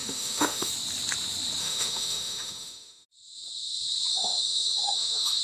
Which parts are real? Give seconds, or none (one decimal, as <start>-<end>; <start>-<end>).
0.7-1.6; 3.1-4.1